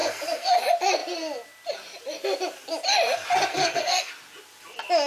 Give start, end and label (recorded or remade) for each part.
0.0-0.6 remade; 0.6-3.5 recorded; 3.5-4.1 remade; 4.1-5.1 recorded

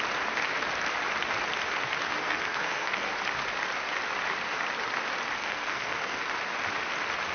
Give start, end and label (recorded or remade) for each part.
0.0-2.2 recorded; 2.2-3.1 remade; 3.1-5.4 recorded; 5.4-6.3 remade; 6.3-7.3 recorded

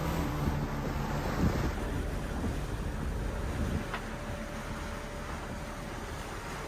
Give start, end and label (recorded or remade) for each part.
0.0-6.7 recorded

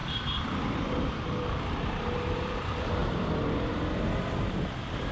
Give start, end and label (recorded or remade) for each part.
0.0-1.1 remade; 1.1-3.0 recorded; 3.0-3.7 remade; 3.7-5.1 recorded

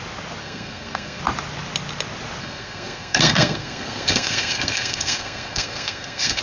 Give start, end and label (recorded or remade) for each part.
0.0-0.4 recorded; 0.4-1.2 remade; 1.2-2.4 recorded; 2.4-6.4 remade